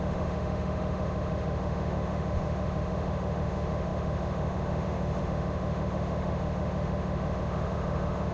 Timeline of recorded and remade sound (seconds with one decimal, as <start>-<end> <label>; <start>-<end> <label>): 0.0-8.3 remade